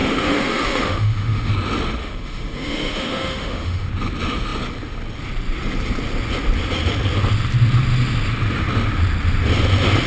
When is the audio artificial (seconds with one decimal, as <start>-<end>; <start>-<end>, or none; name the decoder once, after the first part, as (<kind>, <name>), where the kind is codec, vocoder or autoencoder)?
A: 0.0-1.5 (autoencoder, DAC-VAE); 2.0-3.9